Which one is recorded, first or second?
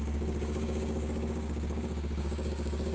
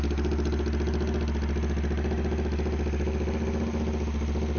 second